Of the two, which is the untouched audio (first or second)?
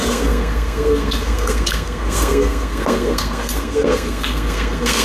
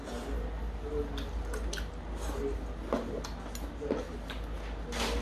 second